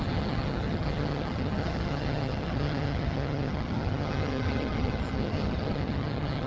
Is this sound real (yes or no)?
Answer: no